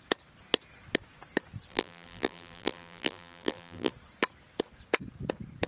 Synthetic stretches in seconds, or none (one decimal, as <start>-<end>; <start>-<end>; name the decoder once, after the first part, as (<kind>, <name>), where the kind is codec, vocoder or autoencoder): 1.7-3.9 (vocoder, BigVGAN v2)